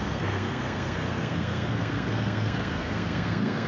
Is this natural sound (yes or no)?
no